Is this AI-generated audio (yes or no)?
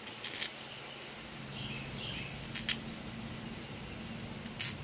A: no